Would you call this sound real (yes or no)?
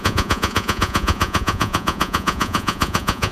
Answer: no